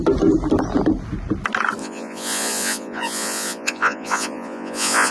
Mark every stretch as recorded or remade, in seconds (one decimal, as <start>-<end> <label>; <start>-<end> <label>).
0.0-1.8 recorded; 1.8-5.1 remade